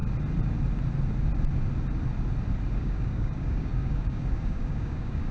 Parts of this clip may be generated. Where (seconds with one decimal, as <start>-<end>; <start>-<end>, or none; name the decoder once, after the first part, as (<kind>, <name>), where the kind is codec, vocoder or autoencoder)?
2.7-5.3 (codec, DAC)

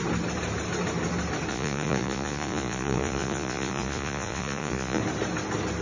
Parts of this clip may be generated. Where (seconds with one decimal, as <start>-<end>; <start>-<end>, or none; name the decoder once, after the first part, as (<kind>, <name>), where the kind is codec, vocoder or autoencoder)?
1.5-5.0 (vocoder, Vocos)

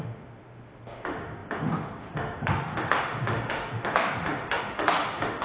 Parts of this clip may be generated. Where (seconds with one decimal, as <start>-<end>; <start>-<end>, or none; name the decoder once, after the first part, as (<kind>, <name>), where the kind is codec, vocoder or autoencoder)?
0.0-5.4 (autoencoder, DAC-VAE)

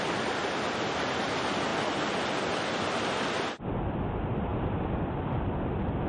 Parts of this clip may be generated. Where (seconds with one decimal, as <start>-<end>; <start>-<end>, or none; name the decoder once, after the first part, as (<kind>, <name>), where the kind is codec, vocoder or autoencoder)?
none

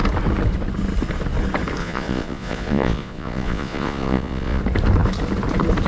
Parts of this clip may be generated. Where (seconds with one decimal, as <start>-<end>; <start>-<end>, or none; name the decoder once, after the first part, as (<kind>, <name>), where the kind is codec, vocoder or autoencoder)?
1.8-4.6 (vocoder, Vocos)

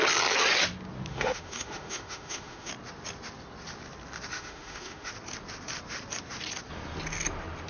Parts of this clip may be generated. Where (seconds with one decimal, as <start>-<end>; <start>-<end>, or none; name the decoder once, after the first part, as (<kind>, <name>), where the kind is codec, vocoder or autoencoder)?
1.1-2.7 (autoencoder, DAC-VAE); 4.3-5.1

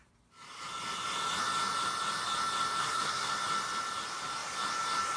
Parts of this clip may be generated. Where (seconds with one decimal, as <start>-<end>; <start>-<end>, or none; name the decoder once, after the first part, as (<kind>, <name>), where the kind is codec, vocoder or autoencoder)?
2.8-3.3 (codec, SNAC)

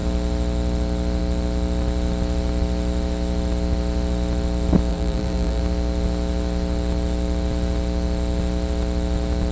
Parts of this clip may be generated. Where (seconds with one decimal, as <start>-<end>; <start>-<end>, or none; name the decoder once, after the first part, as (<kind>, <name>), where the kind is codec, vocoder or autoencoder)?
4.9-5.6 (vocoder, BigVGAN v2)